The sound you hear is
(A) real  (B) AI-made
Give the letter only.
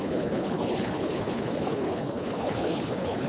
B